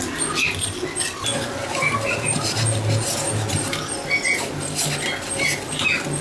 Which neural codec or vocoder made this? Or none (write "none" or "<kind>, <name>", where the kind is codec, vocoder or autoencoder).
none